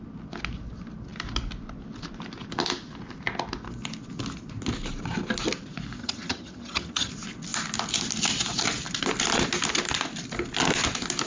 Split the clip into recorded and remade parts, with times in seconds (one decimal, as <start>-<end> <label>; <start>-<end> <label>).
0.0-6.0 recorded; 6.0-7.1 remade; 7.1-11.3 recorded